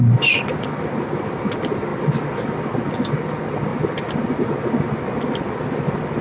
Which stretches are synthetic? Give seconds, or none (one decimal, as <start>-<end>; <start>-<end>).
none